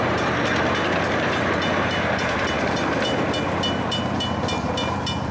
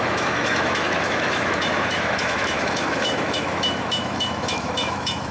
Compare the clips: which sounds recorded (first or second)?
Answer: first